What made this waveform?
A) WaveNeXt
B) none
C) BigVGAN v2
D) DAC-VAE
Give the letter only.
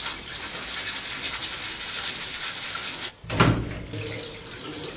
B